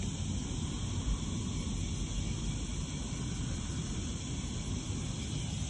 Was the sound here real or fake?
real